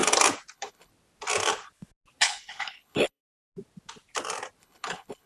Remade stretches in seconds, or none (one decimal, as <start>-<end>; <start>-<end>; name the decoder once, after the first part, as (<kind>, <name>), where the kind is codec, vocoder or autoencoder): 0.5-0.9 (codec, HILCodec); 2.2-3.2; 4.6-5.3